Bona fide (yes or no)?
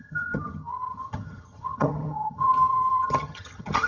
no